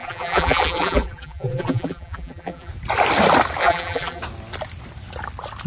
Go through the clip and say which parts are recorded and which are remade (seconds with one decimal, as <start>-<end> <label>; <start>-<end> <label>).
0.0-2.7 remade; 2.7-3.6 recorded; 3.6-4.2 remade; 4.2-5.7 recorded

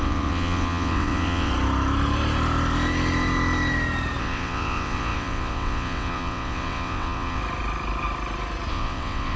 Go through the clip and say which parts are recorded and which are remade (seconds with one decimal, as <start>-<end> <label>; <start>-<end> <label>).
0.0-1.5 remade; 1.5-4.2 recorded; 4.2-7.4 remade; 7.4-8.7 recorded; 8.7-9.4 remade

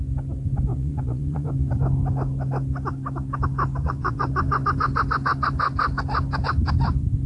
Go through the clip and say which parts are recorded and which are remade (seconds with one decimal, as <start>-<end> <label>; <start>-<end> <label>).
0.0-0.7 recorded; 0.7-1.5 remade; 1.5-3.8 recorded; 3.8-4.3 remade; 4.3-7.3 recorded

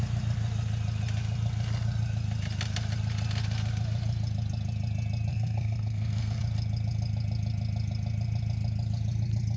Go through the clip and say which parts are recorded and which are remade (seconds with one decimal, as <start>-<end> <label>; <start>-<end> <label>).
0.0-5.3 recorded; 5.3-6.4 remade; 6.4-9.6 recorded

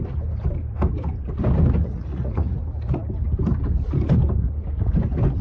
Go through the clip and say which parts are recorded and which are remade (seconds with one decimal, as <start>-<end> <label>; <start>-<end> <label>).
0.0-1.8 recorded; 1.8-2.6 remade; 2.6-5.4 recorded

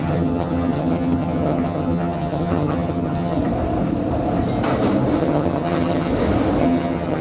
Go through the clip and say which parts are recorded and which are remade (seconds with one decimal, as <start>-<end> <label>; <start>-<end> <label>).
0.0-3.4 remade; 3.4-5.2 recorded; 5.2-6.1 remade; 6.1-6.6 recorded; 6.6-7.2 remade